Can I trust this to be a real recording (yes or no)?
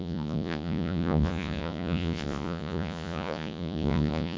no